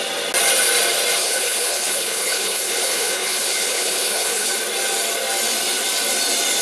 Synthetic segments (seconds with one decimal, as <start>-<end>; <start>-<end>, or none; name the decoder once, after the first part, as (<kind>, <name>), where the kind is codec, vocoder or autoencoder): 1.2-4.5 (codec, HILCodec)